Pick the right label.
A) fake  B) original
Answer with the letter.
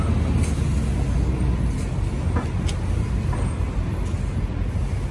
B